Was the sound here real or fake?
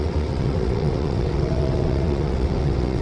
fake